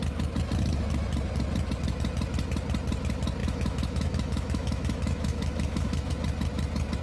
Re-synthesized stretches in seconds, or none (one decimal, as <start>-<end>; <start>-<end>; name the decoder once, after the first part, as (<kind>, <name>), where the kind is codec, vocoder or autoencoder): 3.4-6.1 (autoencoder, DAC-VAE)